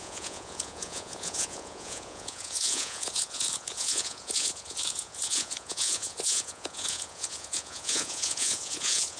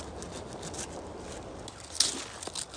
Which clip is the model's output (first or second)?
first